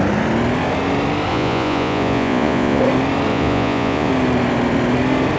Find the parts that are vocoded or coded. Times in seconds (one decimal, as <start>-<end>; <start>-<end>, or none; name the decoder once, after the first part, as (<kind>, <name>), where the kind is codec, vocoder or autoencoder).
1.3-2.8 (vocoder, Vocos); 3.3-4.1